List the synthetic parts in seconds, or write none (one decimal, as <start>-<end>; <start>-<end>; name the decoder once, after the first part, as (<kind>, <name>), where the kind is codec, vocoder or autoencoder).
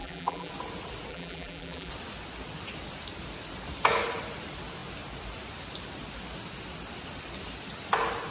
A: 0.0-0.5 (vocoder, BigVGAN v2); 1.1-1.9